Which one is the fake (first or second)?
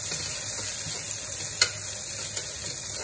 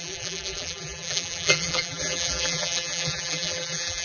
second